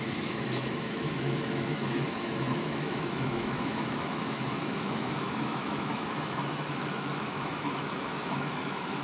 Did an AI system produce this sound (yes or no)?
yes